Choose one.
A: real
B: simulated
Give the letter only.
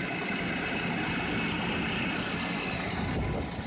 A